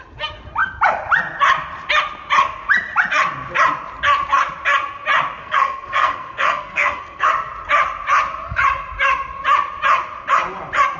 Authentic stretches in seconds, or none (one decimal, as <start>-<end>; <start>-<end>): 0.0-5.4; 7.3-11.0

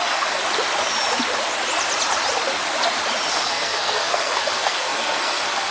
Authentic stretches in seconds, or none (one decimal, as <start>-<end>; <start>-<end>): 0.4-3.3

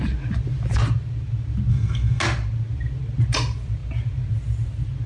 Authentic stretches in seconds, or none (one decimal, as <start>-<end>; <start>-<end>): 0.0-1.7; 2.2-5.1